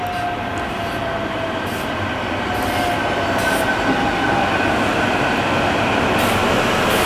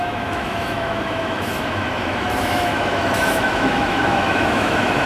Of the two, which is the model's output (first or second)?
second